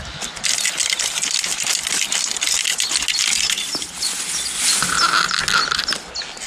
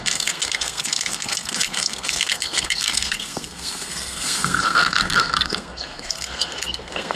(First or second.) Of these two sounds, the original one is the first